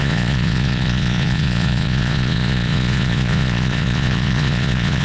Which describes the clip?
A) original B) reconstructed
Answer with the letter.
B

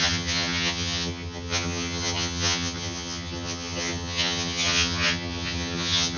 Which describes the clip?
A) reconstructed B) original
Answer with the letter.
A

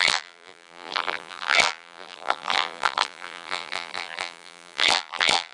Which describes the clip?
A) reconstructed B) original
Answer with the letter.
A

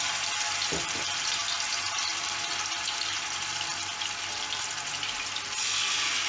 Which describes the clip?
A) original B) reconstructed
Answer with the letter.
A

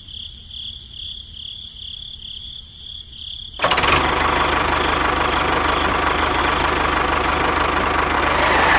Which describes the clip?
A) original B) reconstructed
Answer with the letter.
A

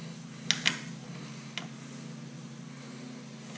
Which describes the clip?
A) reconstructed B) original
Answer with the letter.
B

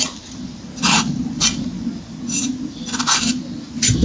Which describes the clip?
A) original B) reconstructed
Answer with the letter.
A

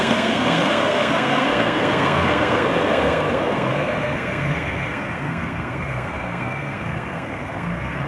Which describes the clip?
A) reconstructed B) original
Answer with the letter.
A